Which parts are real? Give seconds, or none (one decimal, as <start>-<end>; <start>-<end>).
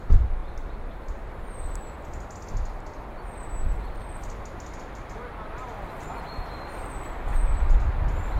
0.0-0.4; 1.4-8.4